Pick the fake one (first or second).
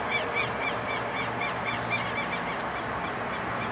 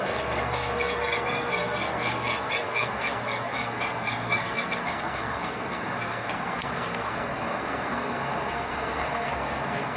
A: second